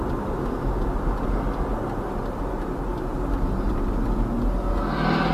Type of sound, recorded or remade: recorded